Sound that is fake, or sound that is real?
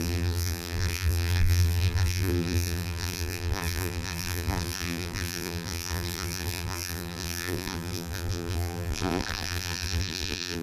fake